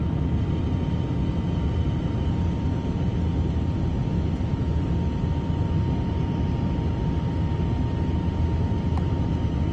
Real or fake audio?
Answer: real